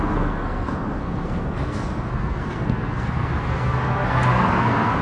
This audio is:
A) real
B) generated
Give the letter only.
B